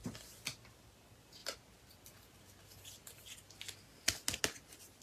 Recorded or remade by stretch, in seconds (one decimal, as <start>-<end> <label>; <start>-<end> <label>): 0.0-5.0 recorded